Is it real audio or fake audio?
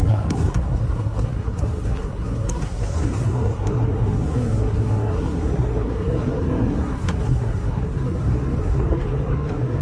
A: fake